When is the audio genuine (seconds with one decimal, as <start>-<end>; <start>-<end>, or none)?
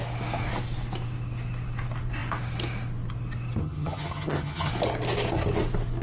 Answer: 0.0-3.6; 4.7-6.0